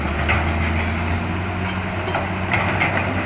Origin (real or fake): real